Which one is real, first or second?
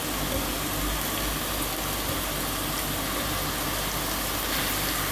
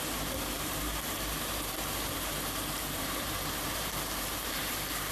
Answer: first